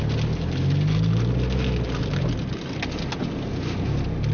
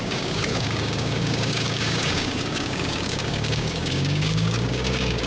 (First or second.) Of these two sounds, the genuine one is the first